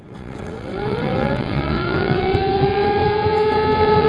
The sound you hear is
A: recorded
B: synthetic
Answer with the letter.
B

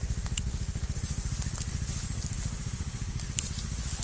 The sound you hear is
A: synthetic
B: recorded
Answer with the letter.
B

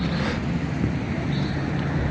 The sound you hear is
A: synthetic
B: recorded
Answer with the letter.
B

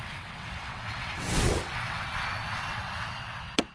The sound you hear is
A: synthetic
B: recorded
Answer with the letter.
A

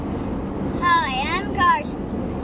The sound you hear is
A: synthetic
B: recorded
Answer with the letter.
B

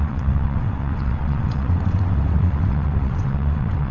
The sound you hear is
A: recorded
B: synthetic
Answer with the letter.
B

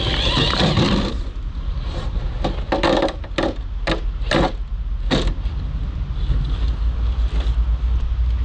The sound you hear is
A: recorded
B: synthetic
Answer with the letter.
A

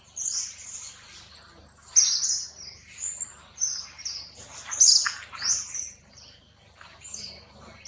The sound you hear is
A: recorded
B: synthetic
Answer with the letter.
A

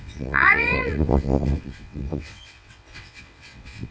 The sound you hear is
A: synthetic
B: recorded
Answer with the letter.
A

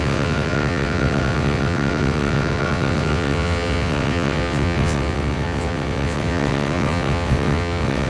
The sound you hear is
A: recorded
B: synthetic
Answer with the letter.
B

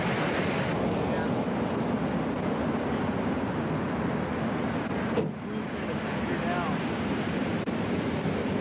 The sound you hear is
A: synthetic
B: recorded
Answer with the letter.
B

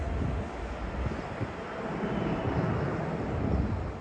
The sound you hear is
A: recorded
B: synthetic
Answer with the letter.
A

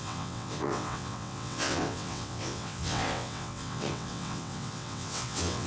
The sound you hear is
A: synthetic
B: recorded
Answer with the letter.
A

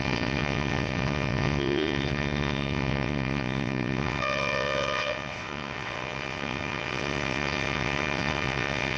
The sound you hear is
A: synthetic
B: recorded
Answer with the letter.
A